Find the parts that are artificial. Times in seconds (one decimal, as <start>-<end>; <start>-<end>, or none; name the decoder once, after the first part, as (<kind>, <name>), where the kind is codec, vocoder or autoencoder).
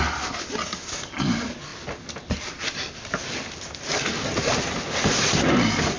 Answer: none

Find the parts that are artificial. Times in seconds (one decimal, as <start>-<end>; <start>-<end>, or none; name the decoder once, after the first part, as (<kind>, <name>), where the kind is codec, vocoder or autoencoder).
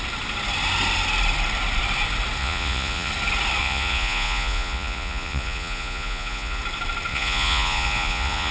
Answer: 2.4-3.1 (vocoder, Vocos); 3.6-6.6; 7.1-8.5